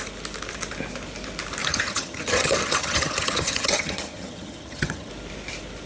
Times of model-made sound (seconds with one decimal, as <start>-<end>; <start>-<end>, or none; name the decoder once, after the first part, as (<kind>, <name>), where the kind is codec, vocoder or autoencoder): 1.6-5.1 (vocoder, HiFi-GAN)